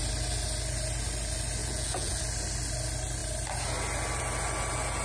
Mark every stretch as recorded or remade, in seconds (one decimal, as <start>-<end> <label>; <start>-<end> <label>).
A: 0.0-1.6 recorded; 1.6-2.2 remade; 2.2-5.0 recorded